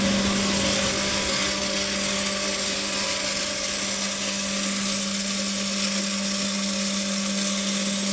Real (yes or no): yes